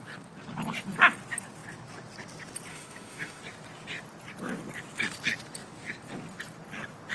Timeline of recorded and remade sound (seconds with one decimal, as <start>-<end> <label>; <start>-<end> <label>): 0.0-2.7 recorded; 2.7-3.4 remade; 3.4-7.1 recorded